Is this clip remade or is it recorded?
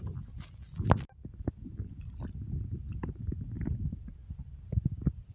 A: recorded